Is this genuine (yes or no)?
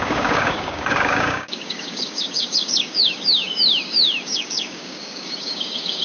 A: no